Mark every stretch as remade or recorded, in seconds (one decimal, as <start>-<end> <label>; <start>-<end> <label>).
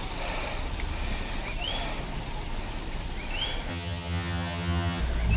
0.0-3.7 recorded; 3.7-5.0 remade; 5.0-5.4 recorded